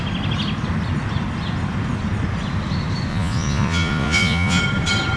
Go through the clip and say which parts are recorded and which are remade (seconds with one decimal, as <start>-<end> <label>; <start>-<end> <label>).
0.0-3.1 recorded; 3.1-4.6 remade; 4.6-5.2 recorded